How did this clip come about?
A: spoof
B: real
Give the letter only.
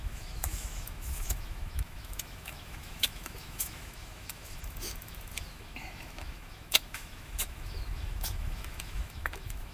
A